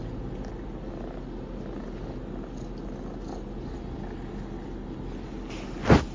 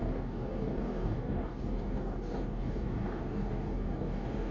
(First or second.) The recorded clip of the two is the first